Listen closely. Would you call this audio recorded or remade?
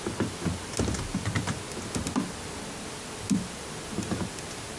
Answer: recorded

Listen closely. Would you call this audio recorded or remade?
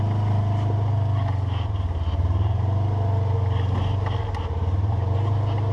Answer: recorded